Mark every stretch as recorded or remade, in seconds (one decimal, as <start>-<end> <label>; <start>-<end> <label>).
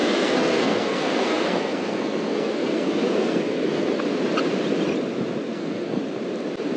0.0-4.0 remade; 4.0-5.5 recorded; 5.5-6.0 remade; 6.0-6.8 recorded